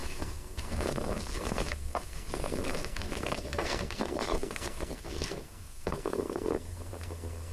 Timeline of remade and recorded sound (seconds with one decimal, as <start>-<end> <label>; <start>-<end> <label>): 0.0-7.5 remade